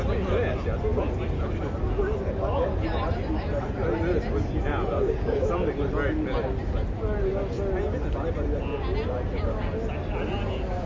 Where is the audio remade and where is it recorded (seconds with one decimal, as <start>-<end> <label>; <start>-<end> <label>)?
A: 0.0-4.7 recorded; 4.7-5.5 remade; 5.5-10.9 recorded